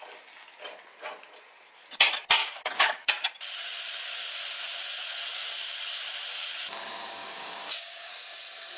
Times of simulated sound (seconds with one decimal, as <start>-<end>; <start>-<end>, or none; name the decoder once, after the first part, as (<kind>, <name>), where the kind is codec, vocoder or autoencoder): 2.4-3.1 (codec, DAC); 7.0-8.1